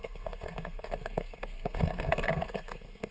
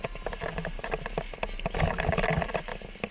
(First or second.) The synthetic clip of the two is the first